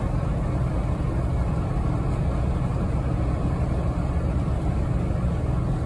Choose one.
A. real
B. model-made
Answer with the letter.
A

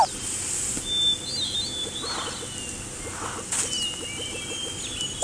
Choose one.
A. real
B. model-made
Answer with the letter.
A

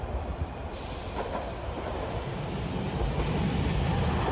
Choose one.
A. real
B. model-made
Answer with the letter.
B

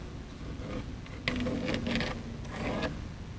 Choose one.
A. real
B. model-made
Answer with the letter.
A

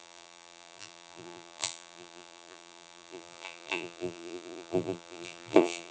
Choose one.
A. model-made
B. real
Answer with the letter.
A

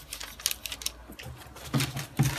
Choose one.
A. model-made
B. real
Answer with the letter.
B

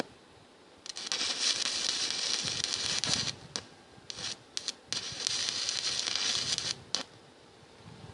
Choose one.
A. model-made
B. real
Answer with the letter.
B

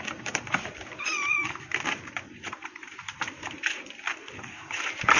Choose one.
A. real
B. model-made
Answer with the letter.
B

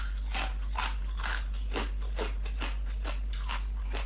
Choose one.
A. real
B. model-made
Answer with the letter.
A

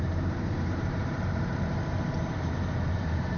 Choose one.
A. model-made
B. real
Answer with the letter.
A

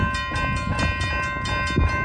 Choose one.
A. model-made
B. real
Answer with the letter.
B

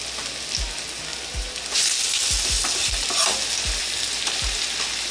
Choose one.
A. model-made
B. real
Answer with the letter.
B